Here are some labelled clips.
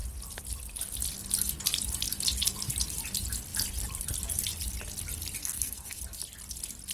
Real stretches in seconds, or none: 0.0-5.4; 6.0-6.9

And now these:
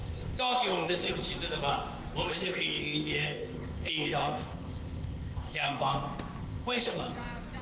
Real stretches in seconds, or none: 1.1-2.3; 5.9-6.4; 7.0-7.6

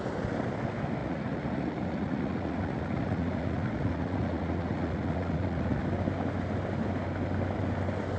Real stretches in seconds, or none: 0.0-1.0; 5.8-8.2